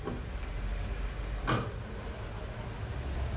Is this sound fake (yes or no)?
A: no